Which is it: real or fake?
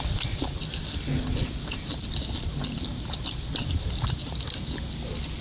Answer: real